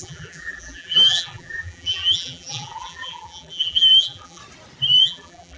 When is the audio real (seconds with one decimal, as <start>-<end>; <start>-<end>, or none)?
4.4-5.0